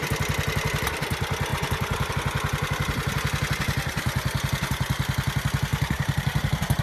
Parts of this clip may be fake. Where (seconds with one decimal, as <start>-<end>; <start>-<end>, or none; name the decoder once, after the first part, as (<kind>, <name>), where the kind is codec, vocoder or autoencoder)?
1.5-2.1 (vocoder, BigVGAN v2); 5.7-6.8